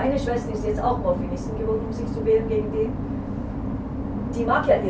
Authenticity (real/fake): real